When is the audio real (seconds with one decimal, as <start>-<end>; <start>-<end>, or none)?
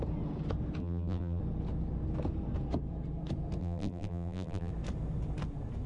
0.0-0.8; 1.4-3.6; 4.7-5.9